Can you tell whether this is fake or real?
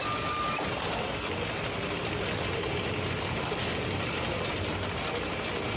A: real